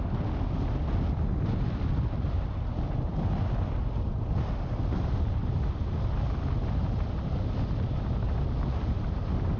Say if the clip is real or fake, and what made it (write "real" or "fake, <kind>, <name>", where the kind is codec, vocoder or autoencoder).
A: real